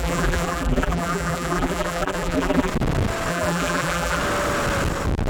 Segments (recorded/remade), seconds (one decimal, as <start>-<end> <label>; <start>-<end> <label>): 0.0-2.7 remade; 2.7-3.3 recorded; 3.3-4.2 remade; 4.2-5.3 recorded